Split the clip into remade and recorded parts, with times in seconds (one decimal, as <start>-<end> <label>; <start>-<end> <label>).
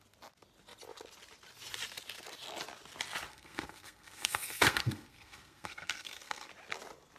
0.0-3.3 recorded; 3.3-6.5 remade; 6.5-7.2 recorded